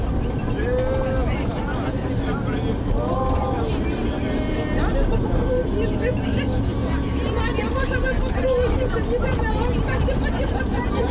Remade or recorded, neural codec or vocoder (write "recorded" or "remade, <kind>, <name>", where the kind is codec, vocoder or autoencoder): recorded